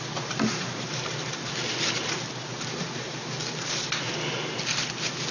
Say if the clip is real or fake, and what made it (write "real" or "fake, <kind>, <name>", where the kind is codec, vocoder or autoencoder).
real